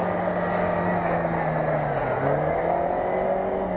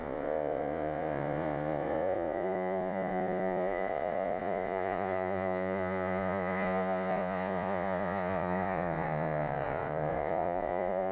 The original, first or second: first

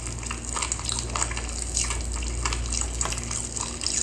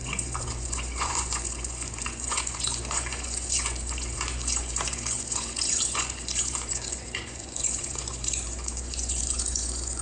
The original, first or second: first